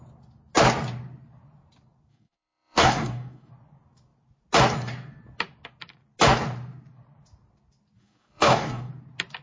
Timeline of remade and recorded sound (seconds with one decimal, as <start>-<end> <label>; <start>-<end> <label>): 0.0-2.1 recorded; 2.1-3.5 remade; 3.5-8.0 recorded; 8.0-8.9 remade; 8.9-9.4 recorded